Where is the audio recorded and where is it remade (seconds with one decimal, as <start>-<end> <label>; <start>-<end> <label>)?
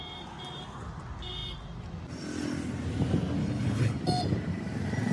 0.0-3.4 recorded; 3.4-4.0 remade; 4.0-5.1 recorded